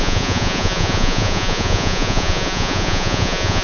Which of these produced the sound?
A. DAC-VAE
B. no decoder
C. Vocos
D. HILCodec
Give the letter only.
C